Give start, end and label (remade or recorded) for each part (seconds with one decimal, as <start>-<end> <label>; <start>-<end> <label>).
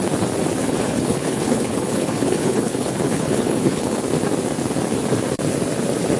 0.0-0.6 recorded; 0.6-4.0 remade; 4.0-6.2 recorded